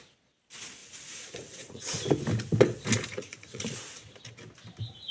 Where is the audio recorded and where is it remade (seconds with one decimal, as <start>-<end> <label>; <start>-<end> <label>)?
0.0-0.8 recorded; 0.8-1.8 remade; 1.8-3.1 recorded; 3.1-4.1 remade; 4.1-5.1 recorded